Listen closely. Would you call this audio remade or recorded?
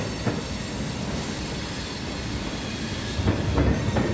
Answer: recorded